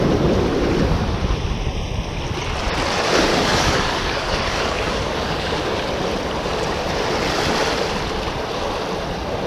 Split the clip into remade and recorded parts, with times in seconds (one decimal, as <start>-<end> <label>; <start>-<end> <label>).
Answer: 0.0-3.3 recorded; 3.3-5.8 remade; 5.8-9.5 recorded